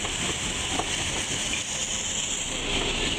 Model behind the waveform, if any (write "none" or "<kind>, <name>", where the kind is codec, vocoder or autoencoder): none